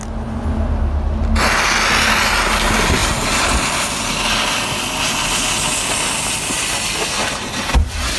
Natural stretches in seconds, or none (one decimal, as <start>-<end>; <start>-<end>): 0.0-8.2